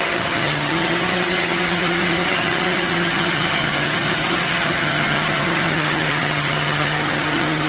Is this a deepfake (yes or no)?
yes